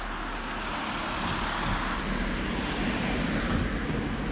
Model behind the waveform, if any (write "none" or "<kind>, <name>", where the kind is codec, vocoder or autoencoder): none